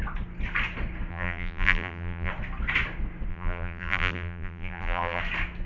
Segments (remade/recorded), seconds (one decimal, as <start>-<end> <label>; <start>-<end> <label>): 0.0-1.1 recorded; 1.1-2.3 remade; 2.3-3.3 recorded; 3.3-5.2 remade; 5.2-5.7 recorded